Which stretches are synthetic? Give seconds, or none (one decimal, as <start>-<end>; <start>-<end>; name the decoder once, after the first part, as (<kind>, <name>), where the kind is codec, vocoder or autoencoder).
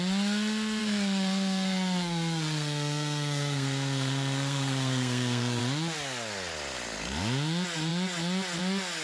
0.8-5.6 (codec, SNAC)